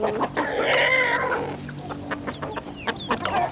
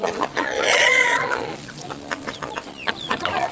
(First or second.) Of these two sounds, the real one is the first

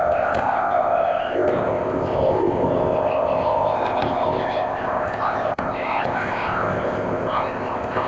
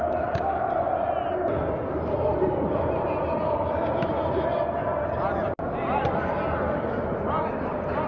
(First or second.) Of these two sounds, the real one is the second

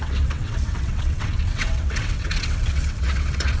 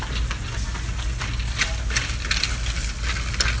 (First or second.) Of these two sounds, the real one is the second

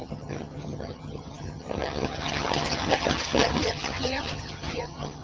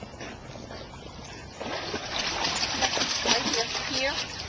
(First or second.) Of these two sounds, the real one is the second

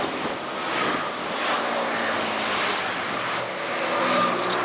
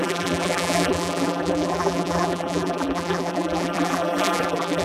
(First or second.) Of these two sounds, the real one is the first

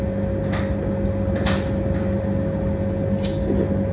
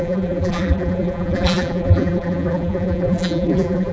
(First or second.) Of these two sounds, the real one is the first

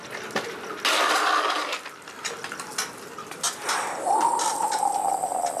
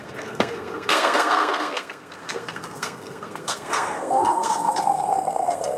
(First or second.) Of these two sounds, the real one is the first